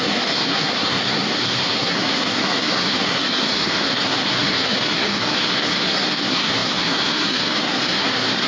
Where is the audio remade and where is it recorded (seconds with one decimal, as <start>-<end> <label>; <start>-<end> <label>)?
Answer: 0.0-8.5 remade